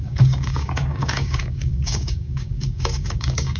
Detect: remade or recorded remade